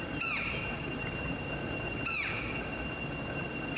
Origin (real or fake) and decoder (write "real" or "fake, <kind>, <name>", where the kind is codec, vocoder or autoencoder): real